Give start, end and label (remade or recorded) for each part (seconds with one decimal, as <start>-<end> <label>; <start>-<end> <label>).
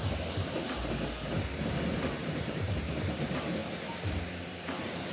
0.0-2.1 recorded; 2.1-3.6 remade; 3.6-4.3 recorded; 4.3-5.1 remade